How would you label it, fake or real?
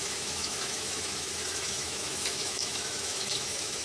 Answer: fake